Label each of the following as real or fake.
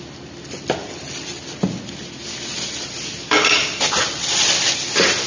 real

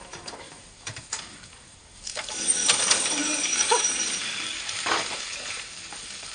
fake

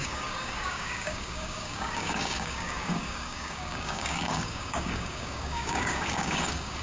fake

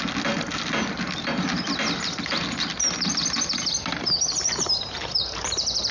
real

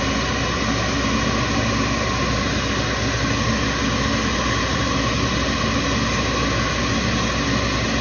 real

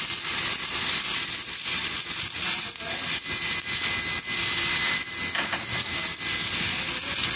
real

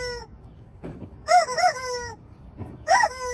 fake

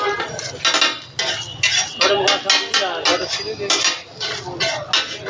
real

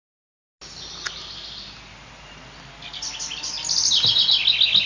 real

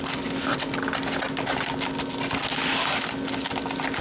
real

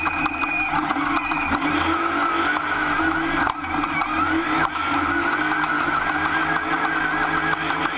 real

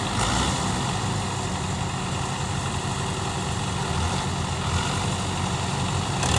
real